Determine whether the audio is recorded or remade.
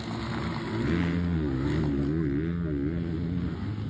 recorded